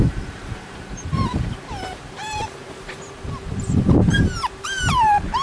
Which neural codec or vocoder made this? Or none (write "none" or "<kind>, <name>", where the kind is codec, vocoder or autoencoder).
vocoder, BigVGAN v2